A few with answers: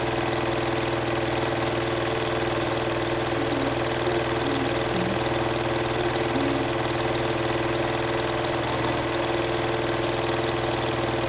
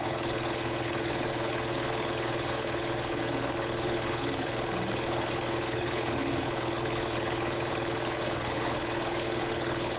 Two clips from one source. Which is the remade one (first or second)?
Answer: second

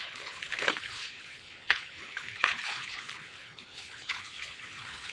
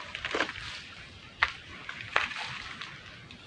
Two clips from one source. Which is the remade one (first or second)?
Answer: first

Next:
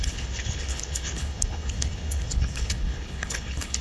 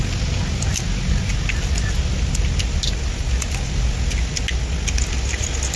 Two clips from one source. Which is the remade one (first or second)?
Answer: first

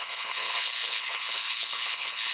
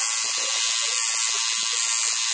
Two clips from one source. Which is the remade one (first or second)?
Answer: first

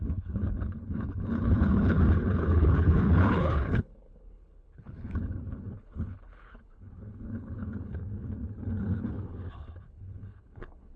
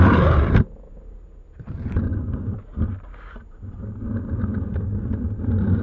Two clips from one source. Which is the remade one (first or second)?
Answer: first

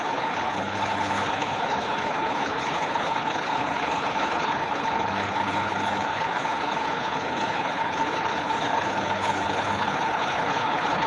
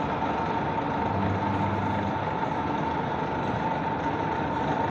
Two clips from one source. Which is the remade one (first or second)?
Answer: first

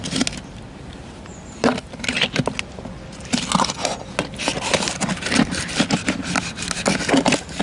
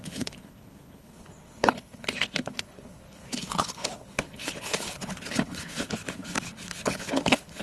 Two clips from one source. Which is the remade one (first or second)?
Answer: second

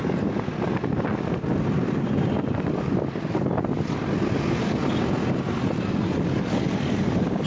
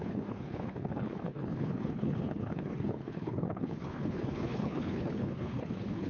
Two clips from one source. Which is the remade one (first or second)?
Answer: second